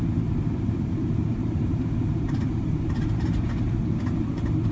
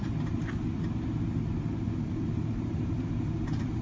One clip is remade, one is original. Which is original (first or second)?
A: second